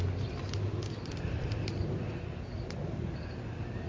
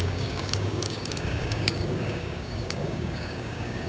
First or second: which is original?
first